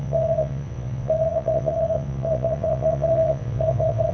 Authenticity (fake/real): fake